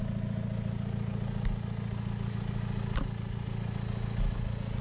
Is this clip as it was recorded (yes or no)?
yes